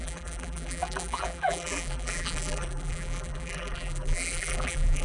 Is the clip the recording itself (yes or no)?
no